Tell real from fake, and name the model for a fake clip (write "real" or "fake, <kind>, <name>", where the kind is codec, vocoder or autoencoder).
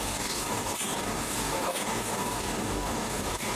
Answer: fake, codec, DAC